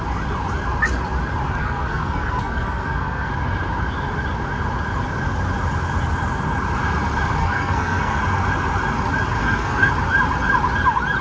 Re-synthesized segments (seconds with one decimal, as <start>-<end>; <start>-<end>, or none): 1.6-3.3; 7.4-8.2; 9.4-9.9